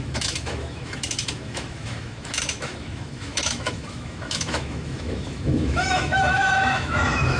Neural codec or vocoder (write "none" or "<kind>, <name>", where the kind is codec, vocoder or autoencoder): autoencoder, DAC-VAE